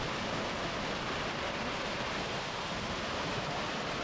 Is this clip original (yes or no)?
yes